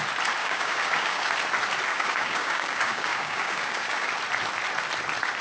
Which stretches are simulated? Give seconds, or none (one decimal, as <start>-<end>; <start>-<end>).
0.4-1.3; 1.9-4.1

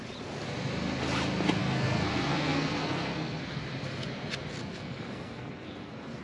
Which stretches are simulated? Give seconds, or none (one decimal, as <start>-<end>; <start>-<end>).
1.6-3.6; 4.6-6.2

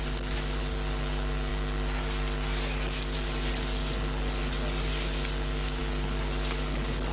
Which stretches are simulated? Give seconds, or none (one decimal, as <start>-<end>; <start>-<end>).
none

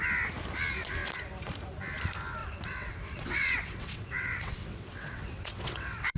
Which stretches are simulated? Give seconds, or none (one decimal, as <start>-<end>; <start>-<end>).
2.4-6.2

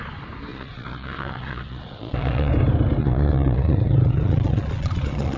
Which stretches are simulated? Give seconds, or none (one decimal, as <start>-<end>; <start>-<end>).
0.5-2.5; 3.0-5.4

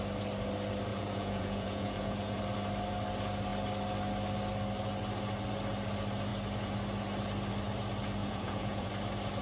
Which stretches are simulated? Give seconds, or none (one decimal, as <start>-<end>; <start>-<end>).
0.9-2.4; 8.2-8.9

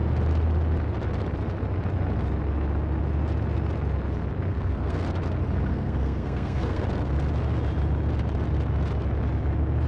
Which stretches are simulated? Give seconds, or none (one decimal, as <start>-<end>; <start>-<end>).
4.5-5.0; 5.7-6.8